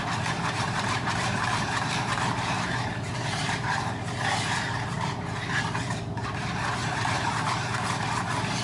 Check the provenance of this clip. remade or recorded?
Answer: remade